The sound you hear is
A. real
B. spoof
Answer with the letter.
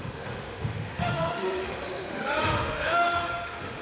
B